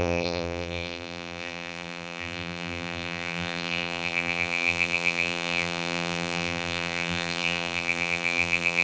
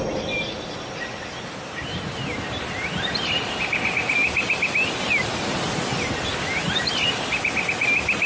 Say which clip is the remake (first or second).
first